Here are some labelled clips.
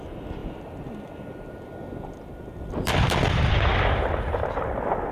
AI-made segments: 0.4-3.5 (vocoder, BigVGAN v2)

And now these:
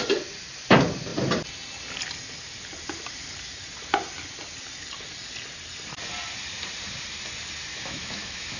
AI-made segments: 7.7-8.6 (autoencoder, DAC-VAE)

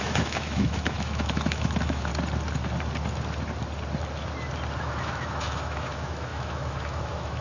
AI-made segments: 0.0-2.1 (autoencoder, DAC-VAE); 4.8-7.4

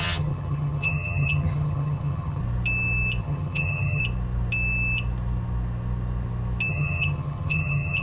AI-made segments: 0.0-2.4 (vocoder, HiFi-GAN); 3.2-4.0; 6.7-8.0

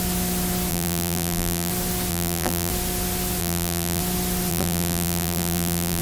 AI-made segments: 0.7-1.7 (vocoder, BigVGAN v2); 2.1-2.7; 3.4-4.0; 4.5-6.0

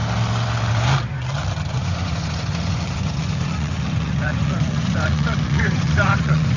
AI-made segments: 1.7-6.6 (vocoder, Vocos)